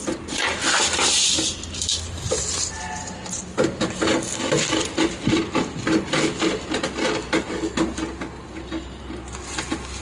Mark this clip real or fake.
real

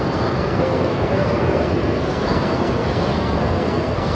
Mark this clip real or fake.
fake